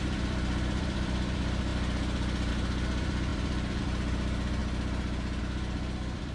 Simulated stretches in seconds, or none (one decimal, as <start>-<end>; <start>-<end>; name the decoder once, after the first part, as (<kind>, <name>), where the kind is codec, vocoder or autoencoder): 0.0-1.7 (vocoder, BigVGAN v2); 2.5-4.6; 5.4-6.3